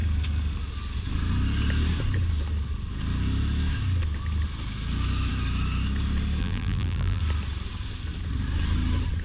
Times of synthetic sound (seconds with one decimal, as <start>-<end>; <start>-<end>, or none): 6.4-7.2